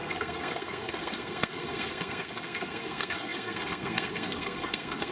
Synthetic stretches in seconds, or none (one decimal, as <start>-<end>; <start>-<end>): 0.0-5.1